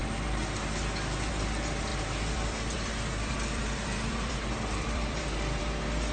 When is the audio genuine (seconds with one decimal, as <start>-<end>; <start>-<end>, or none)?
0.0-1.9; 5.6-6.1